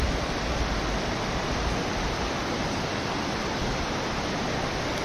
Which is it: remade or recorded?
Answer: recorded